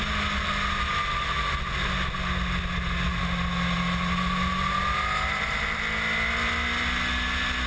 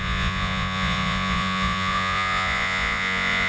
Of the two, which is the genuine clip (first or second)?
first